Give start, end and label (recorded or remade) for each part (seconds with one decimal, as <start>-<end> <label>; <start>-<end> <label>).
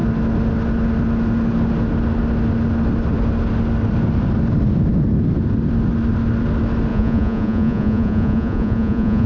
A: 0.0-6.9 recorded; 6.9-9.3 remade